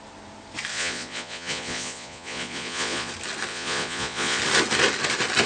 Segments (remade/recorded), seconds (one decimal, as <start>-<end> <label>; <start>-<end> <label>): 0.0-0.7 recorded; 0.7-3.1 remade; 3.1-3.5 recorded; 3.5-4.4 remade; 4.4-5.5 recorded